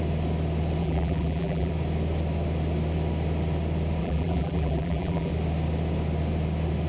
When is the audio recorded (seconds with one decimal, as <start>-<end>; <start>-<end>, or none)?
0.0-0.8; 1.7-4.0; 5.3-6.9